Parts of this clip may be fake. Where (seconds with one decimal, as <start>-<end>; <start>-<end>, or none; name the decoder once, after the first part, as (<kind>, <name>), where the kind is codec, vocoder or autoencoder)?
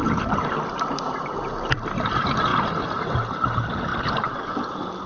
none